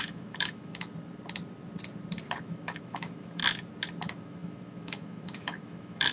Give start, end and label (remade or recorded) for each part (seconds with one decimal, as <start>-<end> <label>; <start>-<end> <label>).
0.0-0.9 remade; 0.9-2.4 recorded; 2.4-3.4 remade; 3.4-4.0 recorded; 4.0-6.1 remade